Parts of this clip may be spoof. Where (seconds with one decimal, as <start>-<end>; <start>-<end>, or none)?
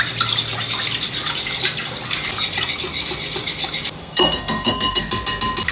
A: 4.0-5.1